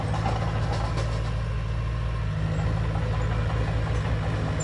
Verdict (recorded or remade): recorded